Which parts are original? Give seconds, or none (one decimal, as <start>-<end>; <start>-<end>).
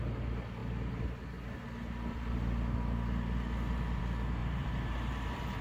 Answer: 0.0-4.4